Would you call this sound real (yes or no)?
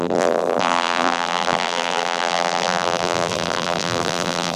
no